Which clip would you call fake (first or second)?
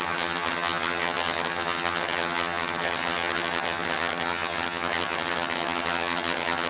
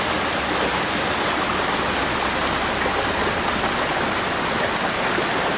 first